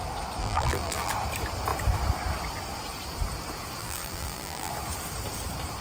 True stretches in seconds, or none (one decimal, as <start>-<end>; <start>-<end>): 0.0-0.4; 1.1-3.8; 4.7-5.8

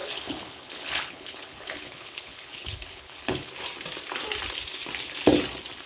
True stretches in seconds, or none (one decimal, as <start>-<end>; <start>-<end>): 3.5-5.9

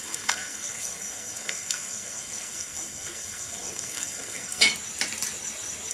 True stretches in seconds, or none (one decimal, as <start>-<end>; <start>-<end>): 4.7-5.9

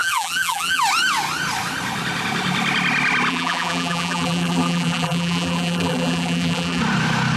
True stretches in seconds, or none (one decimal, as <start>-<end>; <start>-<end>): 0.8-3.3; 6.8-7.4

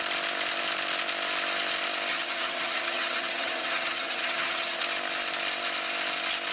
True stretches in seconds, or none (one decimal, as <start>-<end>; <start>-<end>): 0.0-2.1; 4.8-6.5